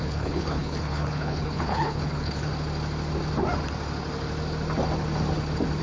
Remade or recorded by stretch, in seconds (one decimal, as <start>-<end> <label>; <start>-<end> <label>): 0.0-2.5 remade; 2.5-5.8 recorded

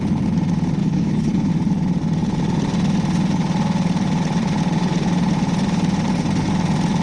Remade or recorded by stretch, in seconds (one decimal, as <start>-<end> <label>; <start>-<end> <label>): 0.0-0.8 recorded; 0.8-1.5 remade; 1.5-7.0 recorded

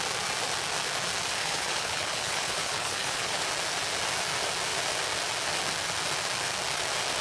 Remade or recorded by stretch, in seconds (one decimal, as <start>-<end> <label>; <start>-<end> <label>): 0.0-1.4 recorded; 1.4-3.4 remade; 3.4-7.2 recorded

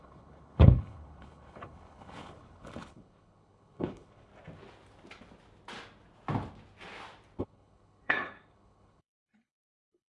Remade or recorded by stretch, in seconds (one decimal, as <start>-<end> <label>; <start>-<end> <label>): 0.0-4.3 remade; 4.3-7.4 recorded; 7.4-10.1 remade

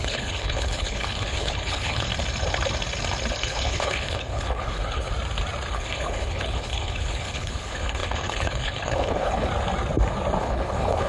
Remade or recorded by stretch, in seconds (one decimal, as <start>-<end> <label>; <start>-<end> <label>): 0.0-2.1 remade; 2.1-3.3 recorded; 3.3-5.1 remade; 5.1-5.7 recorded; 5.7-9.5 remade; 9.5-10.4 recorded; 10.4-11.1 remade

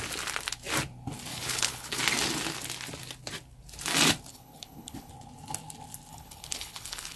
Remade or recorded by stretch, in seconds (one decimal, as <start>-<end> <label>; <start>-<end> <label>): 0.0-1.3 recorded; 1.3-2.0 remade; 2.0-4.3 recorded; 4.3-5.1 remade; 5.1-6.1 recorded; 6.1-7.2 remade